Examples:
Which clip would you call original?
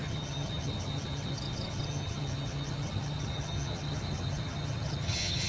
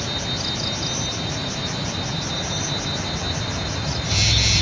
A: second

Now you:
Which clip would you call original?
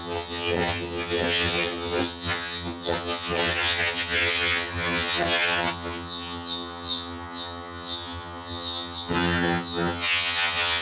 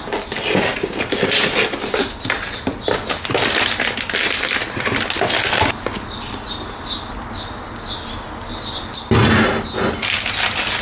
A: second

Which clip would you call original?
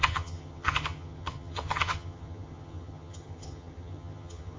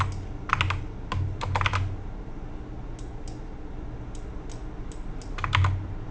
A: second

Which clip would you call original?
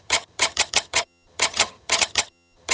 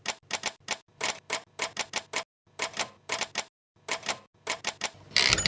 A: second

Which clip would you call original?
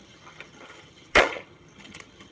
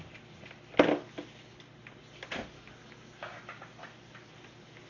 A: second